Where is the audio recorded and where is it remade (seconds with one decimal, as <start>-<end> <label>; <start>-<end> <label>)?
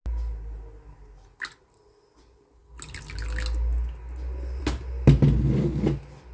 0.0-6.3 recorded